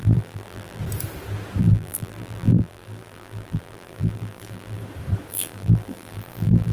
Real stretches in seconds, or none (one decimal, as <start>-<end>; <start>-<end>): 0.8-1.6; 4.8-5.3